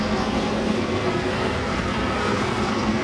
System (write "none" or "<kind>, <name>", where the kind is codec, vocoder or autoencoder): codec, SNAC